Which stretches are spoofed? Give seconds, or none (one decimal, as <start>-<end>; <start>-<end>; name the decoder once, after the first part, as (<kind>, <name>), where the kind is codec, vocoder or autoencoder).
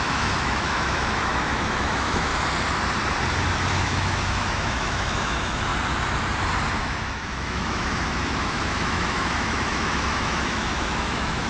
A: 0.0-2.3 (autoencoder, DAC-VAE); 3.7-5.7; 6.8-11.5